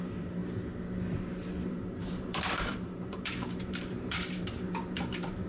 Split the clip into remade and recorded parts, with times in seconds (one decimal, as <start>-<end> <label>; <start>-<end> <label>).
0.0-0.4 remade; 0.4-1.7 recorded; 1.7-5.5 remade